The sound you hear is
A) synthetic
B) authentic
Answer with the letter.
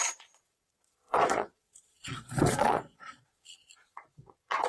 A